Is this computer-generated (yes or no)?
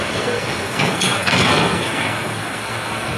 yes